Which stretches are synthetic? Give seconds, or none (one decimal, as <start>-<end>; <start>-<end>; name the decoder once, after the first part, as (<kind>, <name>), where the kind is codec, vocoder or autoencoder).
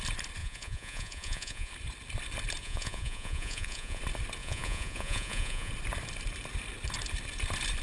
0.4-1.7 (vocoder, Vocos); 2.6-4.0; 4.4-5.7